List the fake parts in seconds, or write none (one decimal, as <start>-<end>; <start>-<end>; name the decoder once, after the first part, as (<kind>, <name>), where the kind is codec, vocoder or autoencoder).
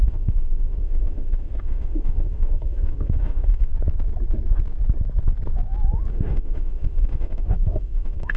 0.0-3.7 (autoencoder, DAC-VAE); 6.1-8.4